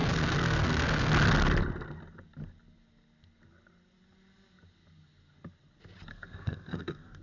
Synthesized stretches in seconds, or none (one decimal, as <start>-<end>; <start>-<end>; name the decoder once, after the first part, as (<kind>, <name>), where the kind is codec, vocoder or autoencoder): 0.0-1.1 (codec, SNAC); 6.1-7.2

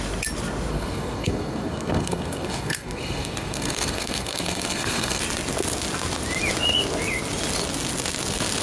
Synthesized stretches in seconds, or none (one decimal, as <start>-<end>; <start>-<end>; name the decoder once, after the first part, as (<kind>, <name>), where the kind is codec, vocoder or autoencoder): 0.7-5.2 (codec, SNAC)

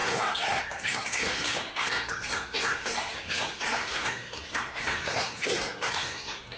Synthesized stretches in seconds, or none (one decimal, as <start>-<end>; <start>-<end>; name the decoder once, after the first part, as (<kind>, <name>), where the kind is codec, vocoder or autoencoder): 0.0-6.6 (codec, SNAC)

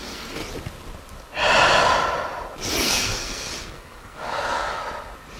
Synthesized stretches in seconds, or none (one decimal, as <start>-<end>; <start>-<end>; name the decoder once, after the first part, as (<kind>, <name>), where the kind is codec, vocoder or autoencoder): 0.0-0.4 (codec, SNAC); 2.8-4.8

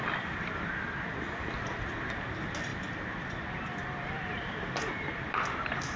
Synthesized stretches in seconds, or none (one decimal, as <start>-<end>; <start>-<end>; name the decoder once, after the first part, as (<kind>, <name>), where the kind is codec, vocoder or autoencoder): none

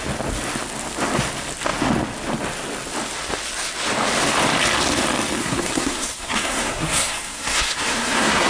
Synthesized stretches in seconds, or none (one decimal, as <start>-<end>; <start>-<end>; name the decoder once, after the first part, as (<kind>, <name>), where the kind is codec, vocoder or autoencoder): 5.4-8.5 (codec, SNAC)

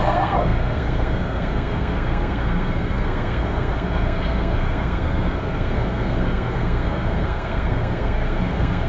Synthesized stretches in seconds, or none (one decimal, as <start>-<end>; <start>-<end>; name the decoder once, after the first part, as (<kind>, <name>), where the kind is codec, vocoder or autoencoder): 0.0-8.9 (codec, SNAC)